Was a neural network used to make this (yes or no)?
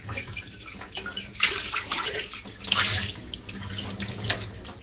yes